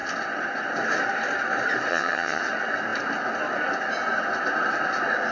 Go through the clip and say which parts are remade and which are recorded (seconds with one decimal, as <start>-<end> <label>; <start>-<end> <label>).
0.0-1.9 recorded; 1.9-2.4 remade; 2.4-5.3 recorded